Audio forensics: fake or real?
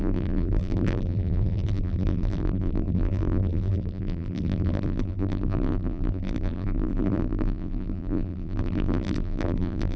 fake